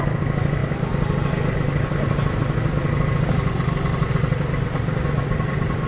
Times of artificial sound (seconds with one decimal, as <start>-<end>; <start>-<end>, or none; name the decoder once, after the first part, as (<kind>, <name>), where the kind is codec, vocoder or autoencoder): none

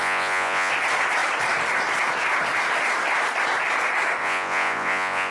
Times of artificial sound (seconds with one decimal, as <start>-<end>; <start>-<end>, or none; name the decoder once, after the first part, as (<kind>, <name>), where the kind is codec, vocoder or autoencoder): 0.0-0.7 (vocoder, Vocos); 4.2-5.3

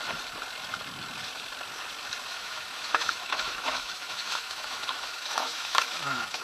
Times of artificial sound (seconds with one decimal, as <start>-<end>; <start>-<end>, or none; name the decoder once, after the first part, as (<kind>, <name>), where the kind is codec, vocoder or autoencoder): 2.3-6.4 (autoencoder, DAC-VAE)

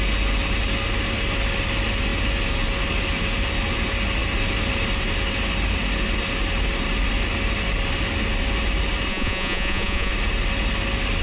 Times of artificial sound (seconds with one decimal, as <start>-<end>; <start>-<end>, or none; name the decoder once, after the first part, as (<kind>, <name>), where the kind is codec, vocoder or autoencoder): 9.1-10.1 (vocoder, Vocos)

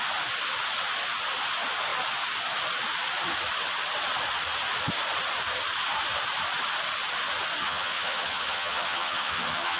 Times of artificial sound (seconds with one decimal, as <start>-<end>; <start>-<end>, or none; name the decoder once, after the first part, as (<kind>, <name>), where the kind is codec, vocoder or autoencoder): 7.6-9.8 (vocoder, HiFi-GAN)

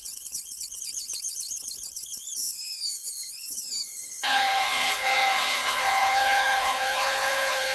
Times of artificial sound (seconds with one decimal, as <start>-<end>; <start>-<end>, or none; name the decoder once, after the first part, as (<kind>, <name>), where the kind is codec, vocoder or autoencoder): 0.0-7.7 (codec, HILCodec)

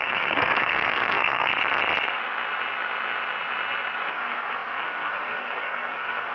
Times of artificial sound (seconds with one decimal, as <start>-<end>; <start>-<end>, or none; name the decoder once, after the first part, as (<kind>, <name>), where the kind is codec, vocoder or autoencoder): 0.0-1.5 (codec, SNAC); 4.1-6.3

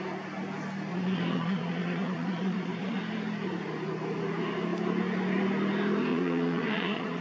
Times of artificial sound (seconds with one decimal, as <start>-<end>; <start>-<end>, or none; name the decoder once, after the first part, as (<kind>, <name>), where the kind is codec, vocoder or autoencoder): 0.9-3.0 (vocoder, Vocos); 6.1-7.2